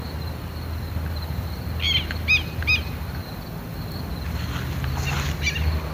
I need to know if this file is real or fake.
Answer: real